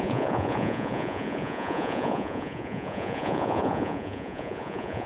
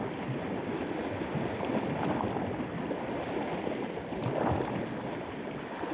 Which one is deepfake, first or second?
first